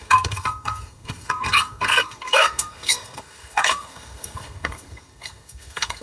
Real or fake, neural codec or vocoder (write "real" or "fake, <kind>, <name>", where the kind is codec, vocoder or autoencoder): fake, codec, SNAC